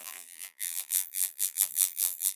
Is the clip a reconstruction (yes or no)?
yes